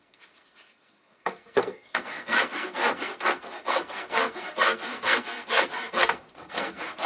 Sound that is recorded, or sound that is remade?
remade